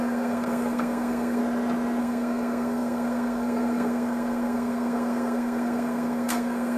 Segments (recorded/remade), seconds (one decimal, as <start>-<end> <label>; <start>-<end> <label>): 0.0-1.4 remade; 1.4-2.0 recorded; 2.0-6.8 remade